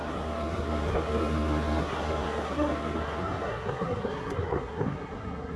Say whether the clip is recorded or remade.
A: remade